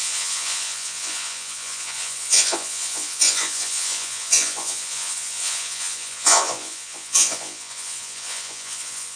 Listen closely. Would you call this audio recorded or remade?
remade